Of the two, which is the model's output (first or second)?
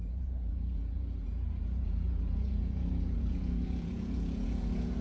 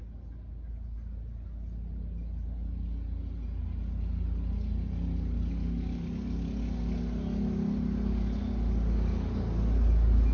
first